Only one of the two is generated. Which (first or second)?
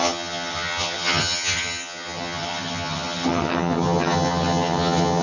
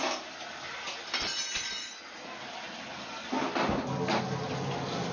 first